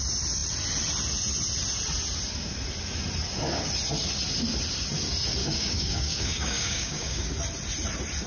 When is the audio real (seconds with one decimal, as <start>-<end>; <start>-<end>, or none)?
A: 0.0-5.4; 7.3-8.3